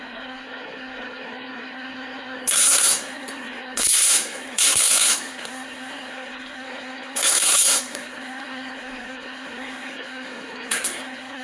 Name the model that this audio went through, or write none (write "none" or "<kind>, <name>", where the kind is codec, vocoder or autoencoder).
codec, SNAC